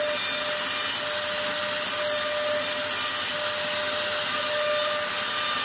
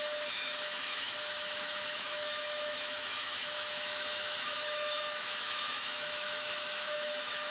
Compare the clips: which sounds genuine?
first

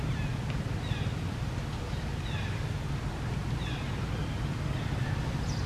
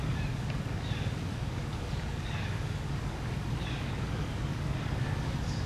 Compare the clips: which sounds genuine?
first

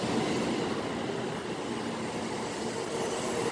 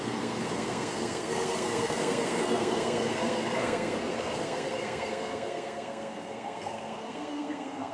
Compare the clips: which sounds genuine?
first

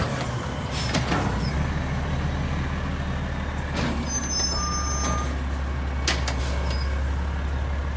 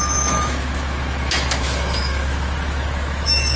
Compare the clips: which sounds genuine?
first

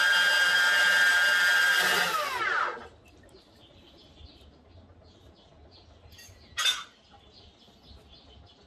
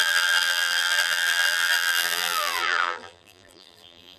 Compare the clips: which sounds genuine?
first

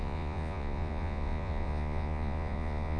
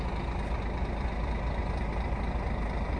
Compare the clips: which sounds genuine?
second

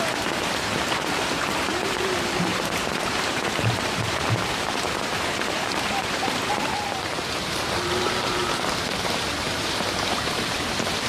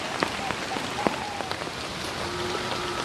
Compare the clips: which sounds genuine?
second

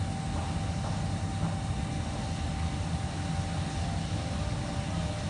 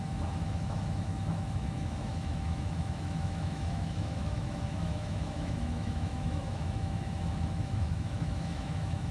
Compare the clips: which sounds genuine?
first